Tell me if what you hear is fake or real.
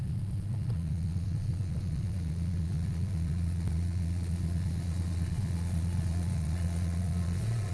fake